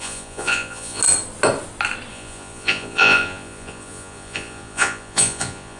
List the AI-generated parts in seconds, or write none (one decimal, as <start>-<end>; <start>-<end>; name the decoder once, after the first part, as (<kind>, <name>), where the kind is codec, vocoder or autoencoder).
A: 0.0-1.0 (vocoder, Vocos); 2.1-5.8